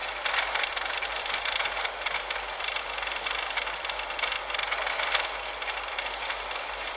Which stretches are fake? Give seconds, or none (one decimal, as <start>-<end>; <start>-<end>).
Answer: none